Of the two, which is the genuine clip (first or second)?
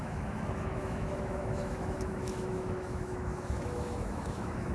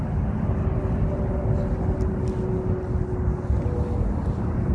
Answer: second